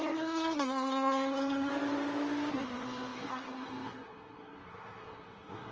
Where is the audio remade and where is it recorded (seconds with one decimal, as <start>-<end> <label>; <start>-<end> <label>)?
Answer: 0.0-1.7 remade; 1.7-2.5 recorded; 2.5-5.7 remade

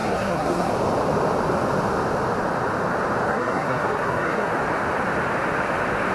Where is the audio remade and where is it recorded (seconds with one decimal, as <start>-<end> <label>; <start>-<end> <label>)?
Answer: 0.0-0.7 remade; 0.7-3.3 recorded; 3.3-4.5 remade; 4.5-6.1 recorded